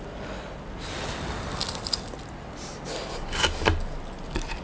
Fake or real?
real